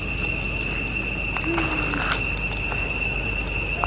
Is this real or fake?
real